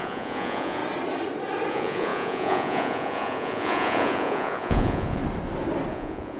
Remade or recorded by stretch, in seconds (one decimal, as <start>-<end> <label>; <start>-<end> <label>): 0.0-0.8 remade; 0.8-1.7 recorded; 1.7-5.2 remade; 5.2-5.9 recorded; 5.9-6.4 remade